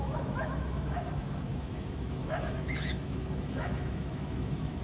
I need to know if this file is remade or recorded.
remade